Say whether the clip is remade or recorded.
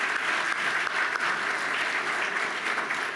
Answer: recorded